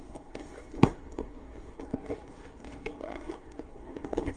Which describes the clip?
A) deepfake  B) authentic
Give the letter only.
A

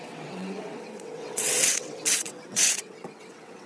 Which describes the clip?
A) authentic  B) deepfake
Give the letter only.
B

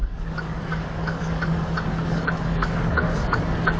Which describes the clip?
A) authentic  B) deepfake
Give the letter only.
B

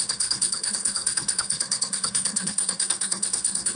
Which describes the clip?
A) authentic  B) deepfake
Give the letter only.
B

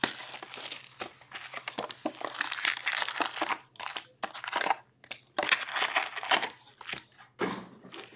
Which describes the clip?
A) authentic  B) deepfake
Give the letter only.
A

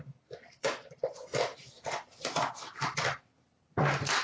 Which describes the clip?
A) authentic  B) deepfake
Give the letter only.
B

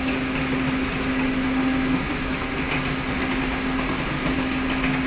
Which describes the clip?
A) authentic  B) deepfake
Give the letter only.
A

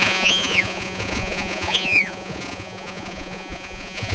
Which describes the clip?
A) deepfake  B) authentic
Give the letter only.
A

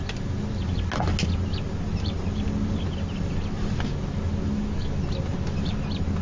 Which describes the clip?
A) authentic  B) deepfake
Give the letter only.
A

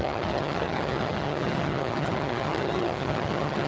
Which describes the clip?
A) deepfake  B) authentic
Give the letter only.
A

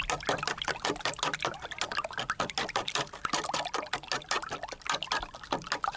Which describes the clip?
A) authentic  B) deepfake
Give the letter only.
A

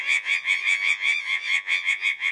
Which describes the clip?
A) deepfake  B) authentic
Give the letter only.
A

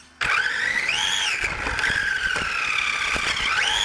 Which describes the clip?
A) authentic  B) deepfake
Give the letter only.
A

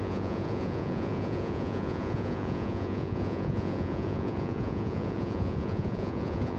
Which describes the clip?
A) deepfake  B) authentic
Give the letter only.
A